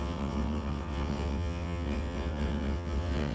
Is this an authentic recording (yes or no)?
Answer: no